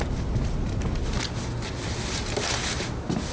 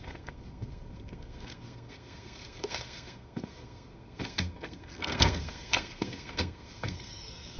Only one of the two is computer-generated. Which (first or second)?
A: second